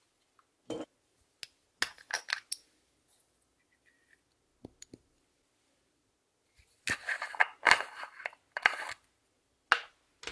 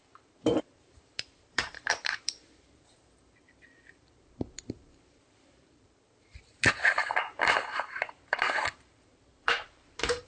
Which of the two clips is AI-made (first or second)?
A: second